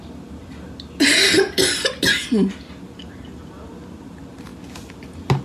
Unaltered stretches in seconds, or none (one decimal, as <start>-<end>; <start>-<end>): 0.0-5.4

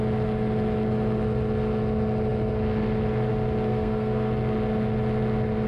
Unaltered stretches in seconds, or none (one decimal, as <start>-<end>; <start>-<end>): 0.0-3.7; 4.3-5.7

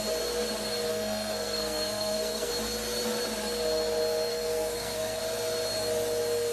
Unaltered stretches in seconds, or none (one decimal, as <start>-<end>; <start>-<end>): 0.0-0.9; 2.5-4.3; 5.2-6.5

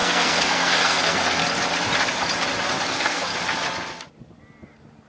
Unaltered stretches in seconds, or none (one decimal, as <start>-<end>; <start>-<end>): 1.4-2.9; 3.3-5.1

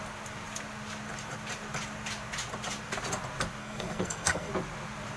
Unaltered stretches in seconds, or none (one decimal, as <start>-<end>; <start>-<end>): 0.0-3.6; 4.5-5.2

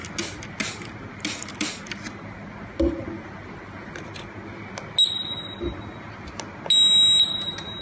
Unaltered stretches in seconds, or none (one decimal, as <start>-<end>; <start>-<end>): 0.0-7.8